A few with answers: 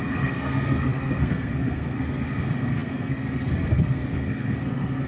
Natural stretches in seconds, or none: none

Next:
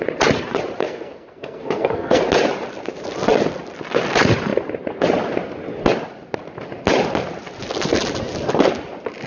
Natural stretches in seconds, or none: 0.0-0.8; 2.2-9.3

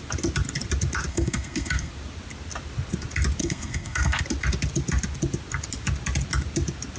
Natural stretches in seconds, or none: 0.0-1.1; 1.9-3.4; 4.2-7.0

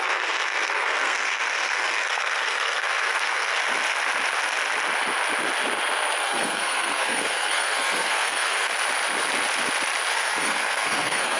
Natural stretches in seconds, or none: 3.6-6.2; 8.7-10.1

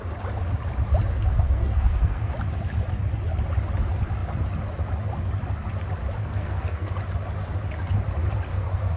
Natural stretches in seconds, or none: 0.0-1.1; 2.3-6.2; 6.9-8.5